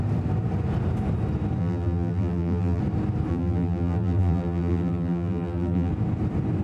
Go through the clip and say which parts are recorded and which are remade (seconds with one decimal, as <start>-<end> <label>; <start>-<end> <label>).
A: 0.0-1.6 recorded; 1.6-2.8 remade; 2.8-3.3 recorded; 3.3-5.9 remade; 5.9-6.6 recorded